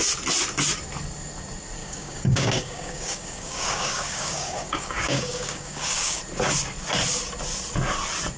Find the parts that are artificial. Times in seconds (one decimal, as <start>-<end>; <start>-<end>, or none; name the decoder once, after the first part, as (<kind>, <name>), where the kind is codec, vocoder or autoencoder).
1.8-6.2 (codec, DAC)